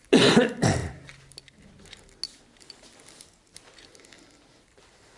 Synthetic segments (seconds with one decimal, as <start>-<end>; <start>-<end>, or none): none